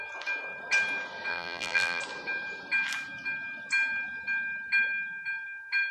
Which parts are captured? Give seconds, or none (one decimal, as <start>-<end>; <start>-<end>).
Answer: 0.0-1.3; 2.0-5.9